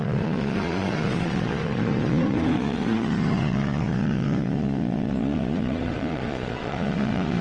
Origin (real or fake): fake